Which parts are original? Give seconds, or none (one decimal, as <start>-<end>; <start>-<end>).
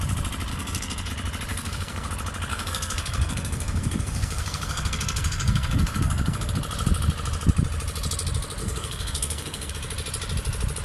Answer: 0.0-0.5; 1.1-1.5; 2.1-2.5; 6.5-8.6; 9.7-10.8